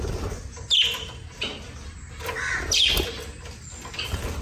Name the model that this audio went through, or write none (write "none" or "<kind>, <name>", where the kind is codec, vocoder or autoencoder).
none